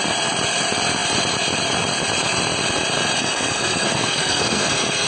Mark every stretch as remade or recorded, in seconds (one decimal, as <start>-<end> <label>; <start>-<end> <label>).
0.0-3.2 recorded; 3.2-5.1 remade